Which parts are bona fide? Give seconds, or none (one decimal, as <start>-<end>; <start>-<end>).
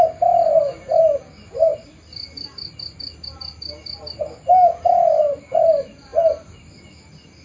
0.0-7.4